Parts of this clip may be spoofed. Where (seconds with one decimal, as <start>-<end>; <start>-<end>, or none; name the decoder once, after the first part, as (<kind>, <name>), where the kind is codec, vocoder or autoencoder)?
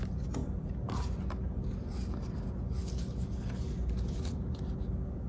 none